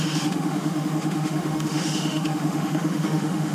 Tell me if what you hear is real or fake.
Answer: fake